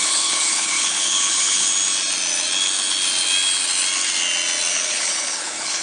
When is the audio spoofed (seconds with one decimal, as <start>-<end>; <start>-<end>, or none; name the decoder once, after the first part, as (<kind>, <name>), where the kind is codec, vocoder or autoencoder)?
0.0-1.7 (codec, HILCodec); 4.7-5.8